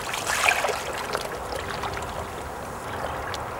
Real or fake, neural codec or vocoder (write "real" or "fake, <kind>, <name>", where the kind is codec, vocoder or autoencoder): real